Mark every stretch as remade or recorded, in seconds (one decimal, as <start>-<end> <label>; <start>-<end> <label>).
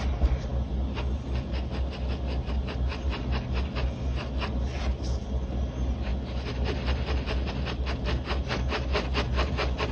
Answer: 0.0-9.9 recorded